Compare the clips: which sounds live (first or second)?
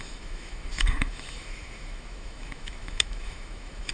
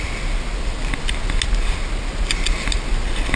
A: second